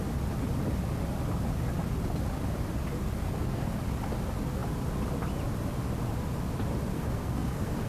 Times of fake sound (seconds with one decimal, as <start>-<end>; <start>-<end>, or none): 3.2-3.8; 6.9-7.9